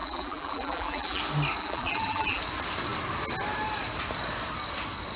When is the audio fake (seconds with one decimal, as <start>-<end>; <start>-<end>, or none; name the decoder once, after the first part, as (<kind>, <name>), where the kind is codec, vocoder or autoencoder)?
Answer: 0.0-1.2 (vocoder, BigVGAN v2); 1.6-2.4